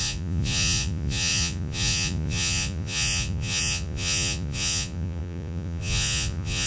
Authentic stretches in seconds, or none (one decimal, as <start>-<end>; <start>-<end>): none